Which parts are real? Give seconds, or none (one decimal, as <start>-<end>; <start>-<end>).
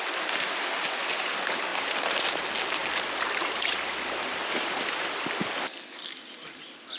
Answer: 0.0-1.7; 2.4-2.8; 5.6-7.0